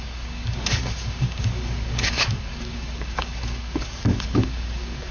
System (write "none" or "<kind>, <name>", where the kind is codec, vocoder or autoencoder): codec, DAC